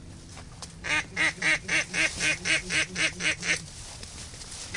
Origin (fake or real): real